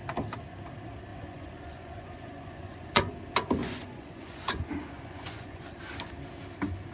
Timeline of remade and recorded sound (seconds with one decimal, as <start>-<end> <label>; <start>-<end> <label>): 0.0-1.1 recorded; 1.1-3.1 remade; 3.1-3.6 recorded; 3.6-5.8 remade; 5.8-6.9 recorded